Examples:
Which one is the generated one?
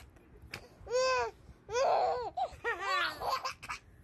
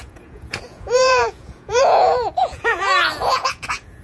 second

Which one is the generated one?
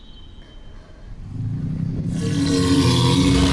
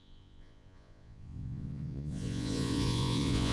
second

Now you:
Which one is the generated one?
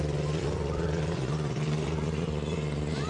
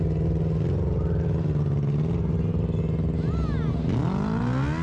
first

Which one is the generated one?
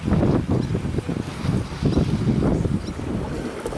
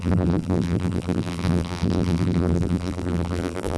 second